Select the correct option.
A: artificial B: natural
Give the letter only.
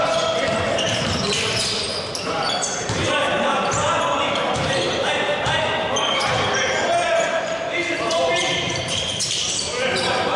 A